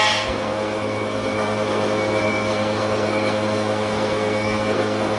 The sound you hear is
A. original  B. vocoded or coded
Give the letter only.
B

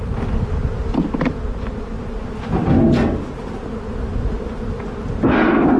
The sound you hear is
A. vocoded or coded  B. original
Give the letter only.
B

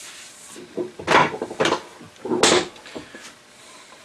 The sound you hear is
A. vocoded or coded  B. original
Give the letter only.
B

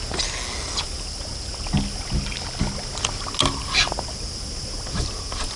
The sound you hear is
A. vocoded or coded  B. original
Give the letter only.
B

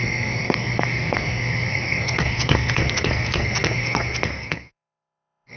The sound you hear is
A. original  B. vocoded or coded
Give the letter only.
B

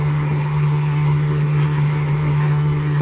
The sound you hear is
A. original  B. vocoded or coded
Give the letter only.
B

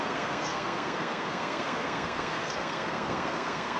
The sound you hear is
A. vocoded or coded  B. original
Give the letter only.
A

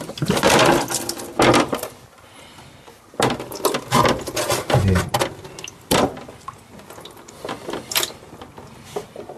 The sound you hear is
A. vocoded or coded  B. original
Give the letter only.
B